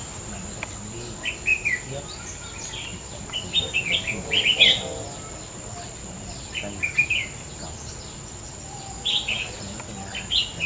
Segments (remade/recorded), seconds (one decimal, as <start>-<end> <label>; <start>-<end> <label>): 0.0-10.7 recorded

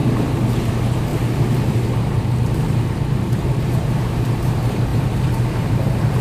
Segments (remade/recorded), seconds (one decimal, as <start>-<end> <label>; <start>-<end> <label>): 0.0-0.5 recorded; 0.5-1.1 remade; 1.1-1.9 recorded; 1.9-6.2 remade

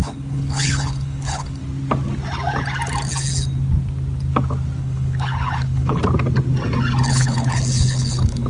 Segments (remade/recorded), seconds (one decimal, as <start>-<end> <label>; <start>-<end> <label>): 0.0-1.6 remade; 1.6-4.8 recorded; 4.8-6.0 remade; 6.0-7.1 recorded; 7.1-8.5 remade